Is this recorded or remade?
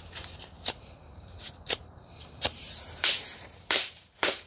remade